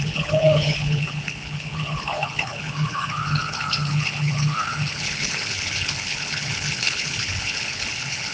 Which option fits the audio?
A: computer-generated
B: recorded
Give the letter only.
A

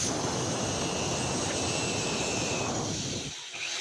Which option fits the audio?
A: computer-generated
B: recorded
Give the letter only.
B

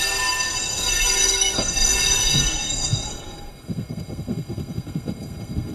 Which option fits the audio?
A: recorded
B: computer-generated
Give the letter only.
B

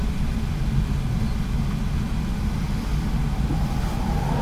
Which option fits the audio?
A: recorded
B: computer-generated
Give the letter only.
A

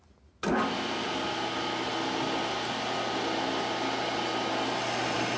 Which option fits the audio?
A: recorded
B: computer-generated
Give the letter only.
A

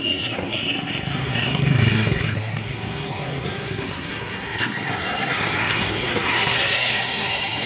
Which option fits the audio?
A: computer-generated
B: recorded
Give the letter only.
A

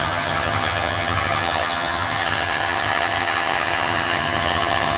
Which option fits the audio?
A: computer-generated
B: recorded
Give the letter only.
A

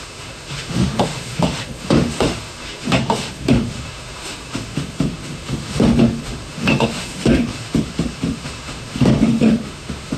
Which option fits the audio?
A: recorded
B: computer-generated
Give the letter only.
B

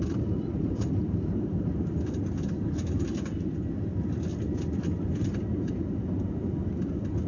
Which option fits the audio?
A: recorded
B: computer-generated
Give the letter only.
A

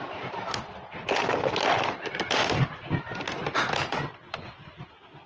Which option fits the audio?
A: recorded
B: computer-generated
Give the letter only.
A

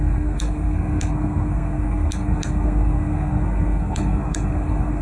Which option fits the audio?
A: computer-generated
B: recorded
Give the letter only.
A